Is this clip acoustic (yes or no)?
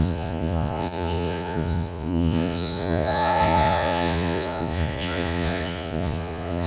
no